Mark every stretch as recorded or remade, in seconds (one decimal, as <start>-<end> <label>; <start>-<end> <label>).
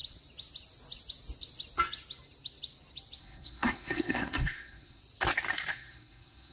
0.0-3.2 recorded; 3.2-5.0 remade; 5.0-5.7 recorded; 5.7-6.5 remade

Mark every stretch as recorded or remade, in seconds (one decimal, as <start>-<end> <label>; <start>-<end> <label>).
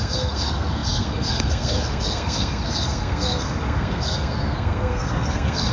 0.0-5.7 remade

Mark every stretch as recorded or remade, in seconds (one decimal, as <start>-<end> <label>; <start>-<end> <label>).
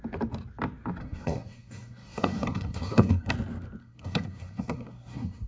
0.0-1.0 recorded; 1.0-3.3 remade; 3.3-3.8 recorded; 3.8-5.5 remade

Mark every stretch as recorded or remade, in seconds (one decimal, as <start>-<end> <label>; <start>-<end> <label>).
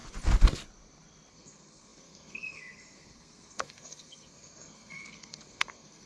0.0-1.3 recorded; 1.3-6.1 remade